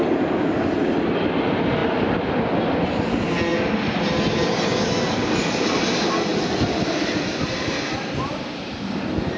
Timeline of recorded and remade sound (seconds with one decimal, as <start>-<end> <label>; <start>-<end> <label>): 0.0-9.4 recorded